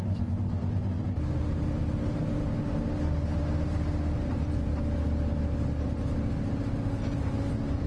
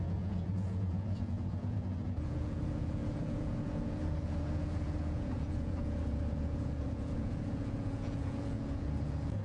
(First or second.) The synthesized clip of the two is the second